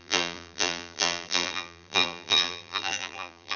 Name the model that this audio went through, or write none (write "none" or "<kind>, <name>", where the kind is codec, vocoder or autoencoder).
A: vocoder, BigVGAN v2